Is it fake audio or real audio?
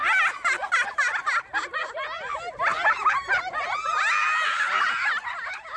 real